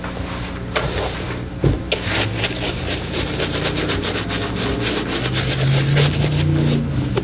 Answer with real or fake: real